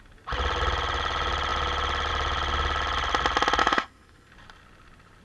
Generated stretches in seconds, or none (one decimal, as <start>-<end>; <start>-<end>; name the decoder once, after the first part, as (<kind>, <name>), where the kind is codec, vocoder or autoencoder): 3.6-4.3 (codec, SNAC)